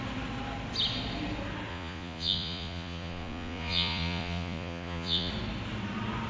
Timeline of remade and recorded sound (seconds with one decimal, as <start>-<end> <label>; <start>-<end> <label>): 0.0-1.7 recorded; 1.7-5.3 remade; 5.3-6.3 recorded